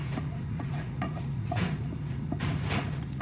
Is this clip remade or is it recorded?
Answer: remade